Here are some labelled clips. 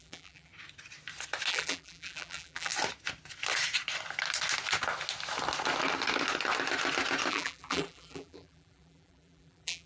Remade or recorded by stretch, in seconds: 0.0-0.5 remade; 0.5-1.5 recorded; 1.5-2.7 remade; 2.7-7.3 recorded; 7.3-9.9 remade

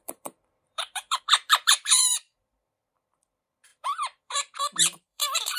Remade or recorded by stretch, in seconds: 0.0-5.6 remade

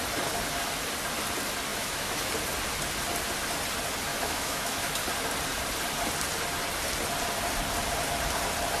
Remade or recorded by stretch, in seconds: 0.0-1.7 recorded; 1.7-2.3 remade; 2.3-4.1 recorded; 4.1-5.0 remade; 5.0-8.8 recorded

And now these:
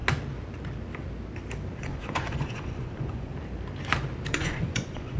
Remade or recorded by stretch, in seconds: 0.0-1.8 recorded; 1.8-3.3 remade; 3.3-4.3 recorded; 4.3-5.2 remade

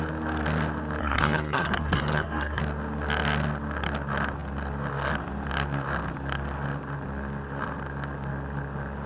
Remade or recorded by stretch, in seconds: 0.0-1.0 recorded; 1.0-2.6 remade; 2.6-9.1 recorded

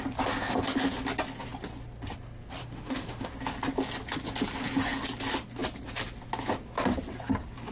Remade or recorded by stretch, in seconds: 0.0-2.6 recorded; 2.6-3.3 remade; 3.3-7.7 recorded